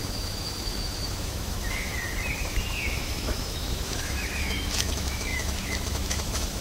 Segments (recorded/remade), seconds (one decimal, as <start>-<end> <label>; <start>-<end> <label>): 0.0-1.9 remade; 1.9-2.4 recorded; 2.4-6.6 remade